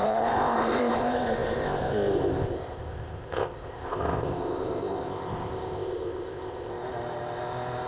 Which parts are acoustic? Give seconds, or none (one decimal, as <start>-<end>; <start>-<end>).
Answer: 6.7-7.9

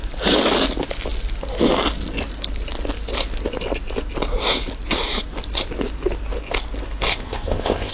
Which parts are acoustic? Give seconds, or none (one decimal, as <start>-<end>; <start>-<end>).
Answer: 0.0-7.1

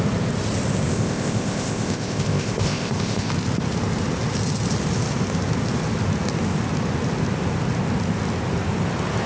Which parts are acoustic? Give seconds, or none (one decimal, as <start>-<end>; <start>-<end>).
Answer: 0.0-0.9; 3.3-9.3

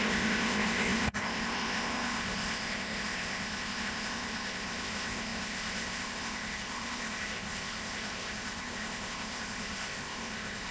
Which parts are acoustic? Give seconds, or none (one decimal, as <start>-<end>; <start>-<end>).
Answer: none

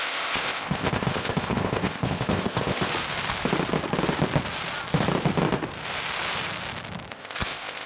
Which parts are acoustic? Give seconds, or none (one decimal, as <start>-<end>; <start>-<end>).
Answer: 2.9-7.1

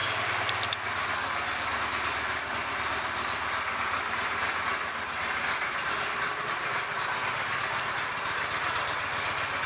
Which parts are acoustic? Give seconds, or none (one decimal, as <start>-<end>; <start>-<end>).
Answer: 0.0-9.7

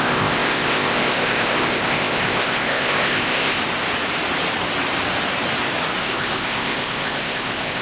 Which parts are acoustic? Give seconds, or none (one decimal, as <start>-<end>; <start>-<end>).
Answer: 3.6-6.0